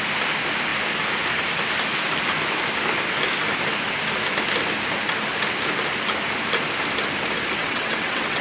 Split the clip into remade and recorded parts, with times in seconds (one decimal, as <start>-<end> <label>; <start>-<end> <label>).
0.0-7.6 recorded; 7.6-8.4 remade